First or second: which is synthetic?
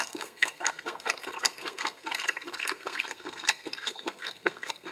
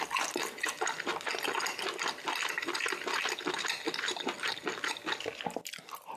first